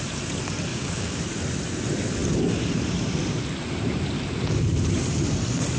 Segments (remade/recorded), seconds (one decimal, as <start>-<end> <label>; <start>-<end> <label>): 0.0-0.7 recorded; 0.7-1.2 remade; 1.2-5.8 recorded